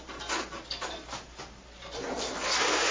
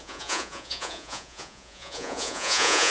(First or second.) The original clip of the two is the first